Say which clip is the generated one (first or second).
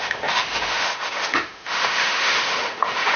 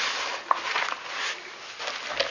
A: first